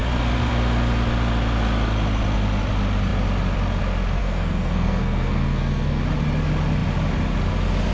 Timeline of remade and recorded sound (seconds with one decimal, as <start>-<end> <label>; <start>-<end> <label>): 0.0-4.2 recorded; 4.2-6.0 remade; 6.0-7.9 recorded